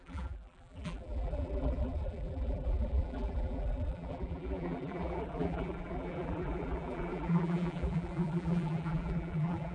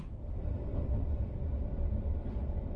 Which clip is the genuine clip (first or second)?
second